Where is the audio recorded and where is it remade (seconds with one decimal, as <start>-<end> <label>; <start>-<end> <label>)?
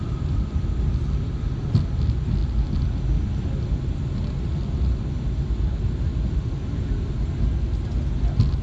0.0-8.6 recorded